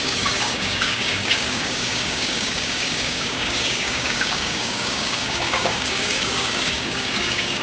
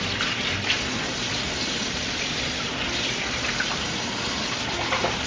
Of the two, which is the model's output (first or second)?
first